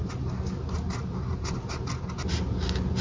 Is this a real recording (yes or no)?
yes